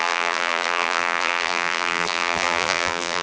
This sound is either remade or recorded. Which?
remade